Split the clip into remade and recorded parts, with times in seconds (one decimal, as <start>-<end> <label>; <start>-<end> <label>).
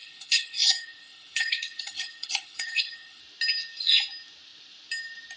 0.0-3.2 remade; 3.2-5.4 recorded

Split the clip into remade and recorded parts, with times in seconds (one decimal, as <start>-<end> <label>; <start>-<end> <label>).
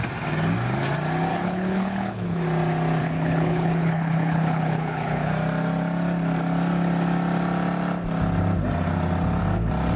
0.0-1.3 recorded; 1.3-2.4 remade; 2.4-3.0 recorded; 3.0-5.3 remade; 5.3-10.0 recorded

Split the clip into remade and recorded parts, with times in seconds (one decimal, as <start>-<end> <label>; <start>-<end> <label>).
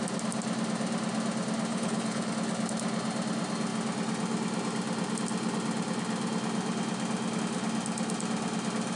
0.0-1.7 recorded; 1.7-2.3 remade; 2.3-9.0 recorded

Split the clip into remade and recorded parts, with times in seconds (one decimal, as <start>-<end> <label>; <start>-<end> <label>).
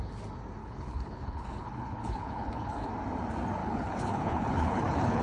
0.0-0.6 recorded; 0.6-2.9 remade; 2.9-3.6 recorded; 3.6-5.2 remade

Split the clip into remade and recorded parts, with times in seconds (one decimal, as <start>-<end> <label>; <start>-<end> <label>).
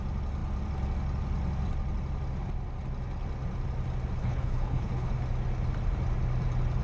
0.0-4.2 recorded; 4.2-5.1 remade; 5.1-6.8 recorded